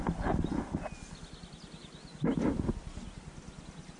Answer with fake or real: real